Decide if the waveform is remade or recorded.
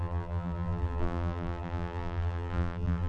remade